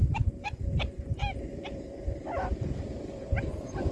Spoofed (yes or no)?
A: yes